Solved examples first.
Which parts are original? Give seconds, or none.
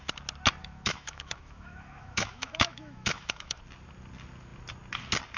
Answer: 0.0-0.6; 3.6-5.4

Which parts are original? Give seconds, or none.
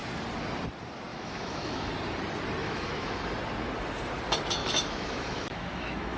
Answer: 0.0-1.1; 1.9-2.6; 3.2-4.6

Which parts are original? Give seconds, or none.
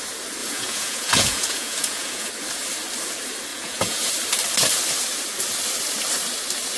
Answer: 0.0-0.4; 2.3-3.5; 4.1-6.8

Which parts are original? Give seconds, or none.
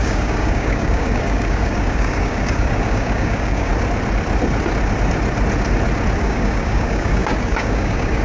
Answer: 3.7-6.2